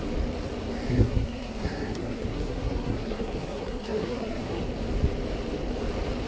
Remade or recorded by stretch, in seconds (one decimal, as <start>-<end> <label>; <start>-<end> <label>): 0.0-0.9 recorded; 0.9-4.6 remade; 4.6-6.3 recorded